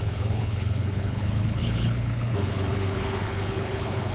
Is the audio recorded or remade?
remade